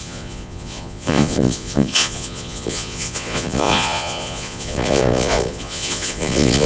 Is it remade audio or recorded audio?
remade